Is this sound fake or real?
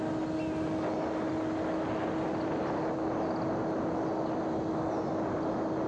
real